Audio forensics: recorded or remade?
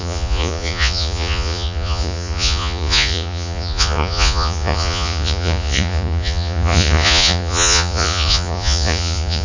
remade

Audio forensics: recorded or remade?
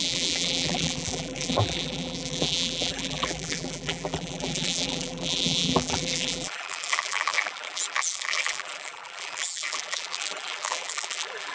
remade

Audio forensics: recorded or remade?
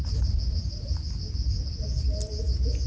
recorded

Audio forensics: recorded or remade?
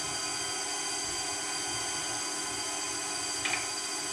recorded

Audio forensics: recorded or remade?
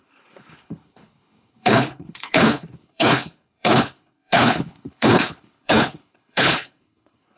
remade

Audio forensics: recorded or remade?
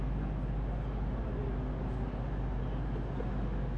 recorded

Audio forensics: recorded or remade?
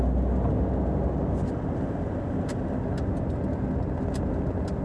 recorded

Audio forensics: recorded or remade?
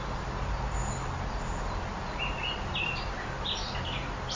recorded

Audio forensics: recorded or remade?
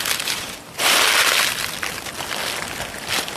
recorded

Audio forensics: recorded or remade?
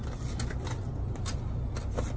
recorded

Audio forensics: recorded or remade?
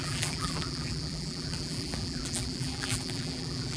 remade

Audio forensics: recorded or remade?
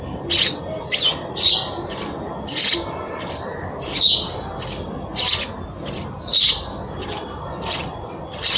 recorded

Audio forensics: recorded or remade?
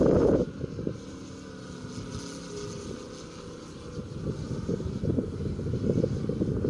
recorded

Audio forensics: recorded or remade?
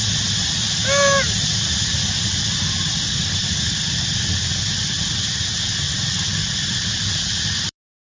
recorded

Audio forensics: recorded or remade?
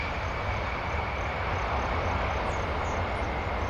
recorded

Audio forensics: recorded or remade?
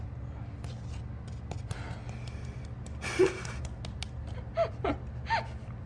recorded